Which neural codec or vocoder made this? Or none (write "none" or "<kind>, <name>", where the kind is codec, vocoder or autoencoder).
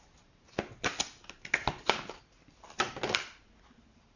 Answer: none